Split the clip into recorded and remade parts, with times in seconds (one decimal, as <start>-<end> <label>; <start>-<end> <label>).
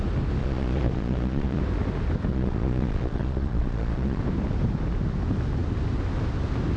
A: 0.0-0.4 recorded; 0.4-1.6 remade; 1.6-2.3 recorded; 2.3-4.2 remade; 4.2-6.8 recorded